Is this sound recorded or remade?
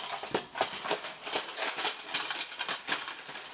recorded